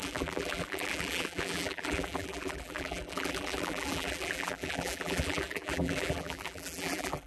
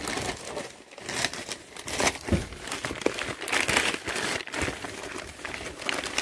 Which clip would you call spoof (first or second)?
first